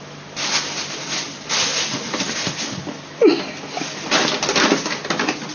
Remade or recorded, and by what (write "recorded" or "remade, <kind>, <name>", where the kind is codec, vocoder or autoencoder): recorded